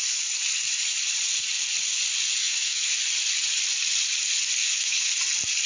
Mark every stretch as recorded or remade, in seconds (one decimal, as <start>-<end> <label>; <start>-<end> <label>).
0.0-2.4 recorded; 2.4-2.9 remade; 2.9-4.6 recorded; 4.6-5.1 remade; 5.1-5.7 recorded